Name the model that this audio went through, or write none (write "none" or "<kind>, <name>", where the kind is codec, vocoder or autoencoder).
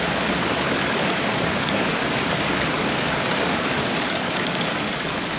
codec, DAC